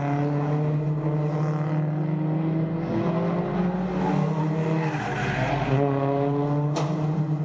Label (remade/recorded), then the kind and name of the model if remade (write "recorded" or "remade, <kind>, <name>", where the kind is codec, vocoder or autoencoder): recorded